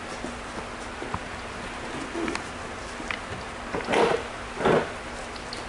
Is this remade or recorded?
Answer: recorded